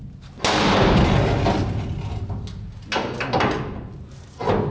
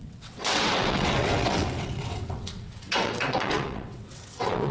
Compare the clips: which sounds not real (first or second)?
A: second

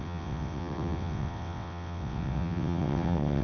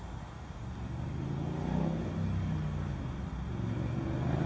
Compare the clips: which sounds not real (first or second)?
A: first